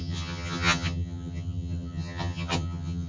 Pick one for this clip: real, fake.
fake